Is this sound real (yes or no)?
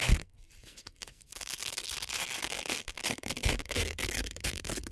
no